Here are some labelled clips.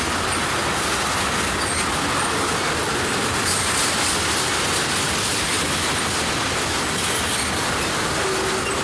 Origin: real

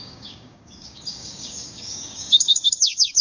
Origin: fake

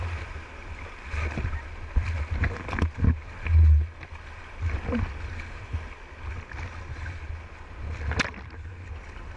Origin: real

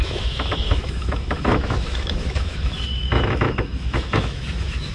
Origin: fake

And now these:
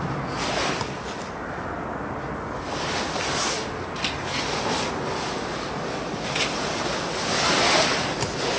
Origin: real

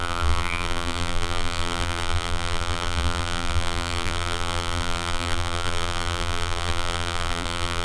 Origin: fake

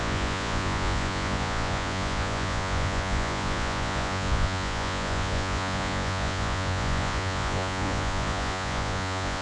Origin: fake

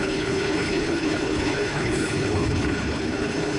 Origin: fake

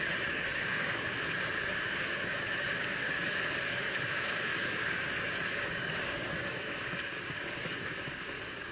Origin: fake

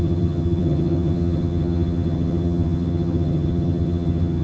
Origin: fake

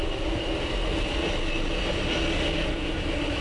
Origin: real